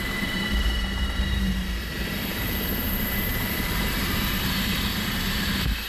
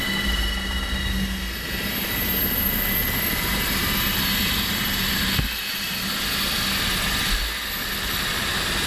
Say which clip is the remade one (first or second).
first